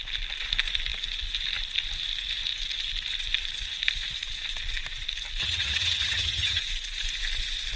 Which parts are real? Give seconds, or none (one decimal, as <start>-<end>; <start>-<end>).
0.0-5.4; 6.6-7.8